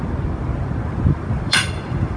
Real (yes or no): no